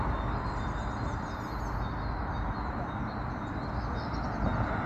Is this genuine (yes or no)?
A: yes